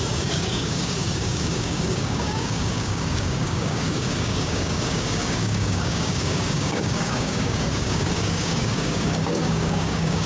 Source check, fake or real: fake